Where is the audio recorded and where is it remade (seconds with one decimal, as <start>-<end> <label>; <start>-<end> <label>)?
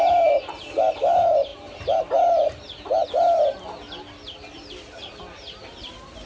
0.0-6.3 recorded